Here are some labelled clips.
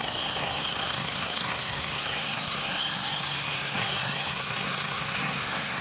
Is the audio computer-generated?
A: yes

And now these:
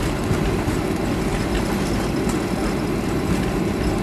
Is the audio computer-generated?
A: no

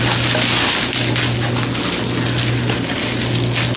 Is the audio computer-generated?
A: no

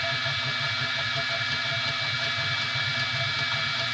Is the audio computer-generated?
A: no